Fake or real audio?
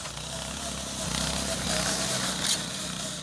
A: real